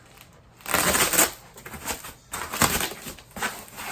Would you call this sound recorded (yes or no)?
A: yes